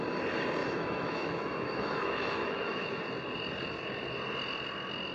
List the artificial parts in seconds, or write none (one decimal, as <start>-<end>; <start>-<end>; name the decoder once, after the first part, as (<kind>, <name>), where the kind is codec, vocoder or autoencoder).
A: 0.6-3.0 (autoencoder, DAC-VAE)